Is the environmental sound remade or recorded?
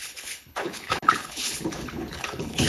remade